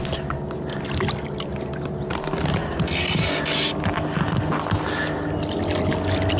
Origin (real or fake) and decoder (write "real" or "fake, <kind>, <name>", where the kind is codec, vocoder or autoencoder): real